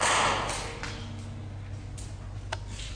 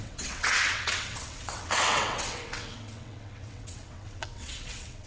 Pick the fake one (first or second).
second